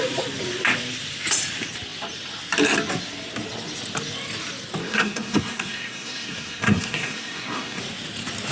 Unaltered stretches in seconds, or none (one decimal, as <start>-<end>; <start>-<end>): 0.0-4.8; 7.8-8.5